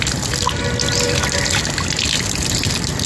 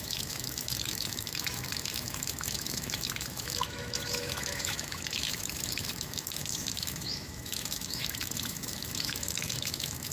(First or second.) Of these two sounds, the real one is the first